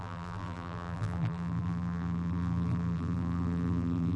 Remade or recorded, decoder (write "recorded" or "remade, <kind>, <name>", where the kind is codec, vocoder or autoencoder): remade, vocoder, BigVGAN v2